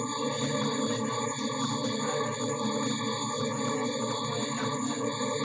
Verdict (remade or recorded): recorded